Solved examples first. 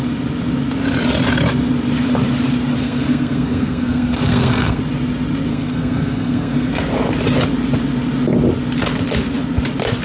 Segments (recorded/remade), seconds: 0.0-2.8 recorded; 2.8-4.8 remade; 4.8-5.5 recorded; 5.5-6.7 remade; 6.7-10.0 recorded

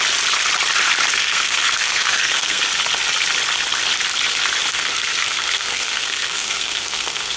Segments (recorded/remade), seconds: 0.0-1.1 recorded; 1.1-2.6 remade; 2.6-4.7 recorded; 4.7-7.4 remade

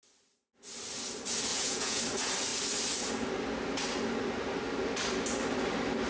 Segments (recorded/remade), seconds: 0.0-1.5 recorded; 1.5-2.0 remade; 2.0-6.1 recorded

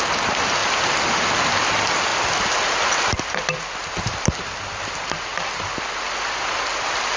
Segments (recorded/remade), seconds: 0.0-7.2 recorded

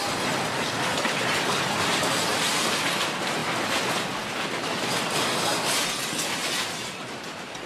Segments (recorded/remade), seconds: 0.0-7.7 recorded

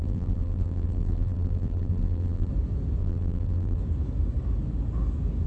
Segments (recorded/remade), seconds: 0.0-2.5 remade; 2.5-3.0 recorded; 3.0-3.8 remade; 3.8-5.5 recorded